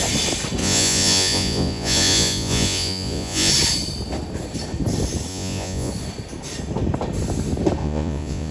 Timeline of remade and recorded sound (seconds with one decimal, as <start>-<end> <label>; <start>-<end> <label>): 0.0-0.6 recorded; 0.6-3.5 remade; 3.5-5.3 recorded; 5.3-5.9 remade; 5.9-7.8 recorded; 7.8-8.5 remade